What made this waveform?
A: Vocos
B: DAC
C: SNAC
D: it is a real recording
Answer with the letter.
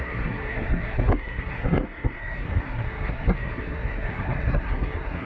C